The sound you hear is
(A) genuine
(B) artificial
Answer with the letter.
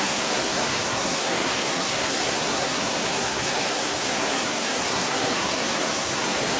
B